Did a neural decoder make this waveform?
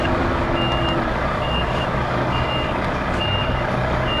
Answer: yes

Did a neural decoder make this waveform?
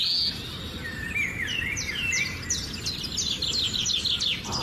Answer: no